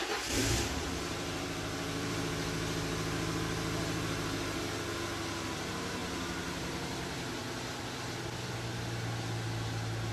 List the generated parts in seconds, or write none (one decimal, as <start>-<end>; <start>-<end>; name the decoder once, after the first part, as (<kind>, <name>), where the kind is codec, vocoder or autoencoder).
0.4-2.3 (vocoder, BigVGAN v2); 6.0-8.8